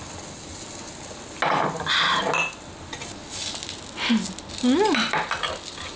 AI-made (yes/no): no